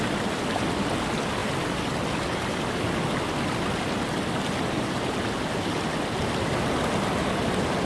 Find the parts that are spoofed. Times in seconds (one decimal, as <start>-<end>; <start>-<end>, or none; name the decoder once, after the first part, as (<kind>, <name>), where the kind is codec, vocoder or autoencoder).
none